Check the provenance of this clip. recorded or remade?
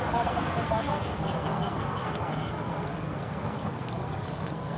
remade